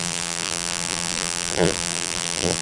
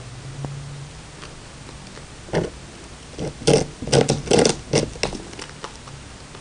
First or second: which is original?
second